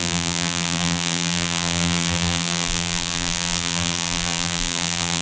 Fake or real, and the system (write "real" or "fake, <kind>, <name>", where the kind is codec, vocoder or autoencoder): fake, vocoder, BigVGAN v2